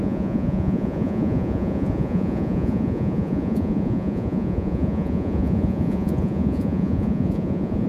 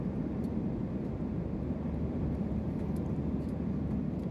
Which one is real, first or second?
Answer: second